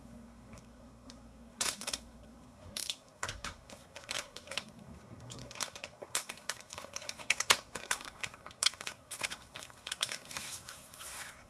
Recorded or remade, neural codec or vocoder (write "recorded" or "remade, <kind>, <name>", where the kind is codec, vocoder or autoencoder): remade, codec, SNAC